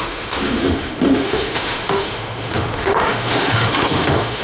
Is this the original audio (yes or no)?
no